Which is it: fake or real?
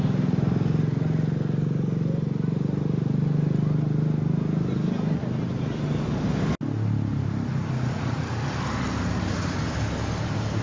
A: real